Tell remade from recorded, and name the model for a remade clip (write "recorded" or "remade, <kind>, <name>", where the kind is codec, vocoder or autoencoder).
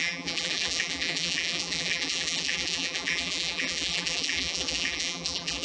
remade, vocoder, BigVGAN v2